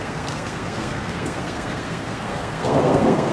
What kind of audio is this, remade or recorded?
remade